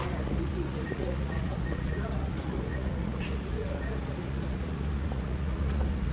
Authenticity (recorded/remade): remade